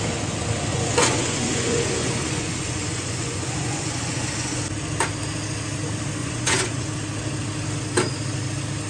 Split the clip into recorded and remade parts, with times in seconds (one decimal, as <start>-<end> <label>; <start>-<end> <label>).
0.0-0.7 recorded; 0.7-4.6 remade; 4.6-6.2 recorded; 6.2-6.9 remade; 6.9-8.9 recorded

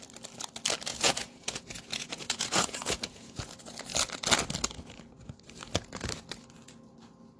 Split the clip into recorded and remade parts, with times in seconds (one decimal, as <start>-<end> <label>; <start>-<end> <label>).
0.0-0.9 recorded; 0.9-3.5 remade; 3.5-7.4 recorded

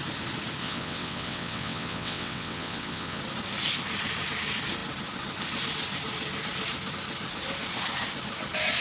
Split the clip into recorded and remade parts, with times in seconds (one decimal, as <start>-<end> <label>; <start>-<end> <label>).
0.0-0.6 recorded; 0.6-3.2 remade; 3.2-8.8 recorded

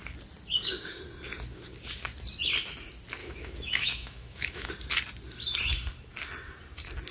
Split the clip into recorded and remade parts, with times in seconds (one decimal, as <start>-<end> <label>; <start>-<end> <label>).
0.0-3.2 recorded; 3.2-4.7 remade; 4.7-7.1 recorded

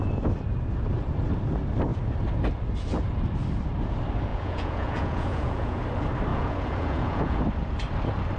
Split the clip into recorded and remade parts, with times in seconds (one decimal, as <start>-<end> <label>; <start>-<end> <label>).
0.0-4.3 recorded; 4.3-5.8 remade; 5.8-6.3 recorded; 6.3-7.4 remade; 7.4-8.4 recorded

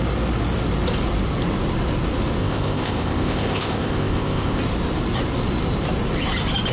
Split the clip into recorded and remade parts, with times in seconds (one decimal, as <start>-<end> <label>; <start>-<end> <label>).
0.0-2.4 recorded; 2.4-4.6 remade; 4.6-6.7 recorded

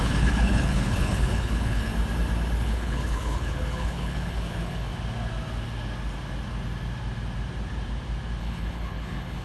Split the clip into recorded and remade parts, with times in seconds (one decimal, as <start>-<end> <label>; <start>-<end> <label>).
0.0-1.9 remade; 1.9-2.6 recorded; 2.6-4.9 remade; 4.9-8.4 recorded; 8.4-9.4 remade

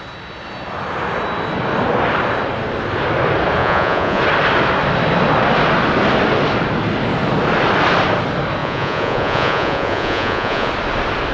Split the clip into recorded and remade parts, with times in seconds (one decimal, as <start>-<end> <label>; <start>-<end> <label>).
0.0-3.6 recorded; 3.6-4.2 remade; 4.2-8.6 recorded; 8.6-10.7 remade; 10.7-11.3 recorded